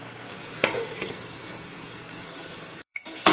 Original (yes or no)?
no